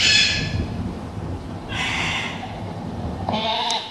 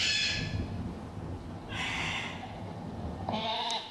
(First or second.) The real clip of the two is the second